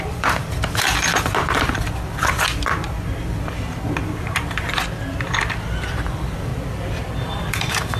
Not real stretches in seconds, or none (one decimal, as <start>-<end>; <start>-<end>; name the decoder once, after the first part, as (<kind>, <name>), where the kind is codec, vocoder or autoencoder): 0.0-1.1 (vocoder, BigVGAN v2); 5.9-6.5; 7.4-8.0